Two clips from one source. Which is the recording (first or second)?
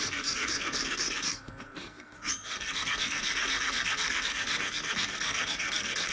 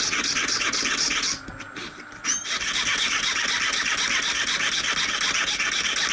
second